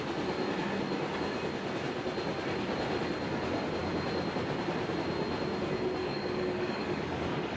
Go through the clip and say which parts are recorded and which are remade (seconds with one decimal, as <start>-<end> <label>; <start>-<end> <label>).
0.0-6.0 recorded; 6.0-7.6 remade